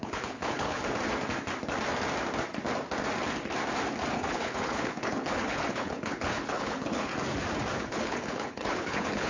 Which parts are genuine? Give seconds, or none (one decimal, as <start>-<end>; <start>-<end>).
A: 0.8-4.1; 7.1-7.8